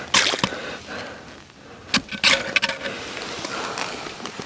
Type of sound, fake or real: real